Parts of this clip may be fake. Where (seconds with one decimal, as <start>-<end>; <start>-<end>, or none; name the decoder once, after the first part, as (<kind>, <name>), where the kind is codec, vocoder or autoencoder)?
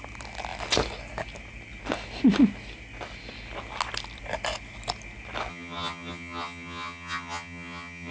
5.5-8.1 (vocoder, HiFi-GAN)